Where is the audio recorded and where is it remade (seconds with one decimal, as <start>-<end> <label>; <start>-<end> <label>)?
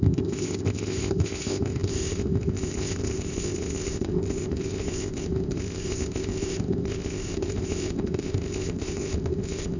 0.0-9.8 remade